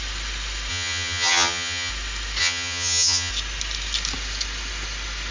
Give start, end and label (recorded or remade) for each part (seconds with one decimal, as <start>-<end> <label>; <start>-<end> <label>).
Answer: 0.0-0.7 recorded; 0.7-1.9 remade; 1.9-2.4 recorded; 2.4-3.3 remade; 3.3-5.3 recorded